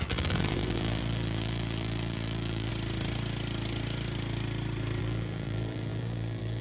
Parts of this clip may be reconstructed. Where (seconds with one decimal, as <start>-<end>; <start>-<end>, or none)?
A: 0.0-2.7; 5.0-6.6